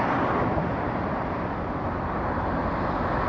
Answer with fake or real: real